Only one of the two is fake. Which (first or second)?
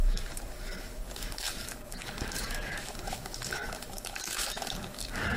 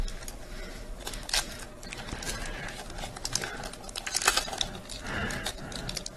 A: first